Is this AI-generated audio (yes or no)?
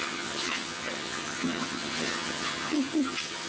yes